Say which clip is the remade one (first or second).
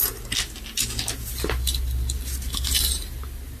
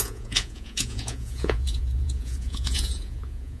second